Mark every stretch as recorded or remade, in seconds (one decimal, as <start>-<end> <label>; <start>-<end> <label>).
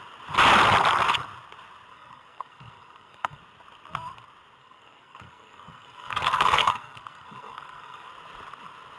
0.0-1.9 recorded; 1.9-3.4 remade; 3.4-4.6 recorded; 4.6-8.1 remade; 8.1-9.0 recorded